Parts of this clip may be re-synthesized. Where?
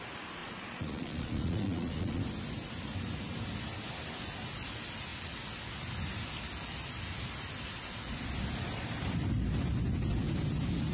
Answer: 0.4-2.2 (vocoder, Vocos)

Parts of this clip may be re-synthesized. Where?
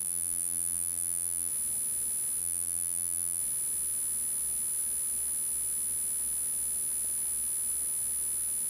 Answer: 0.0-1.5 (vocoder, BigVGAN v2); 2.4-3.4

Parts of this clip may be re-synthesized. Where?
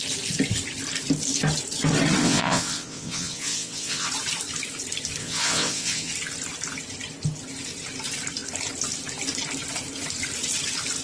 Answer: 2.2-4.1 (vocoder, WaveNeXt); 5.2-6.1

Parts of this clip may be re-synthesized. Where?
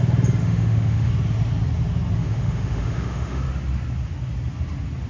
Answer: 0.4-1.1 (autoencoder, DAC-VAE); 2.2-3.4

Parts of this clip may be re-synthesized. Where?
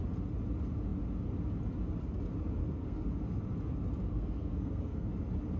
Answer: 2.6-3.1 (codec, SNAC); 4.1-5.1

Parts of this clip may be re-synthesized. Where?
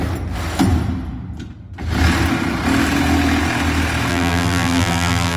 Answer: 4.1-5.4 (vocoder, BigVGAN v2)